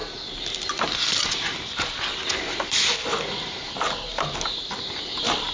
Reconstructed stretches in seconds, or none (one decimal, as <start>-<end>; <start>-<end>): none